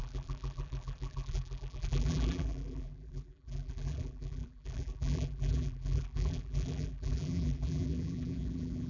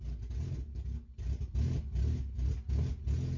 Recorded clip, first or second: second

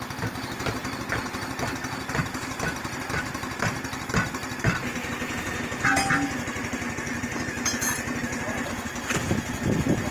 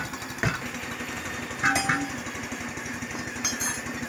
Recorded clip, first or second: second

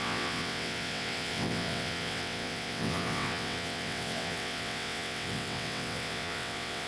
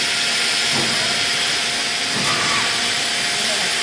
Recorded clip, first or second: second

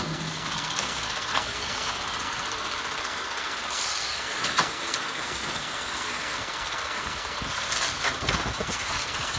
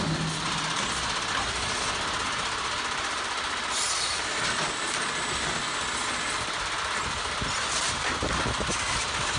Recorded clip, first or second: second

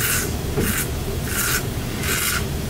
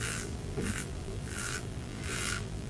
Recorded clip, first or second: first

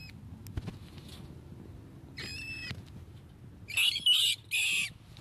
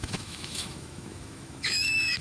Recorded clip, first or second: first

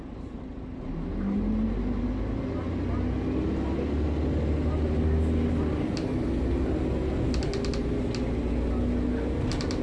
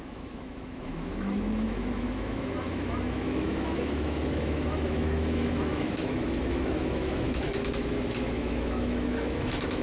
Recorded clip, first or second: first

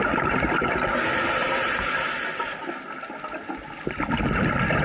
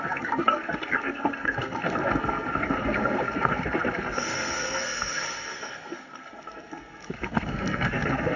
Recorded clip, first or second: first